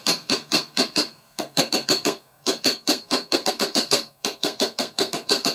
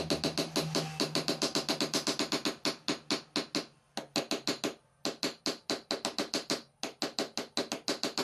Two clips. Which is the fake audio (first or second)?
first